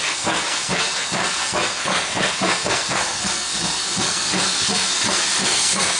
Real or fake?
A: fake